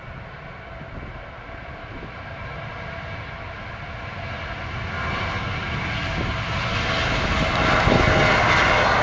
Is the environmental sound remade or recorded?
recorded